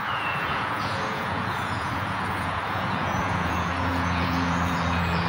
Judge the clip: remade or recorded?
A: remade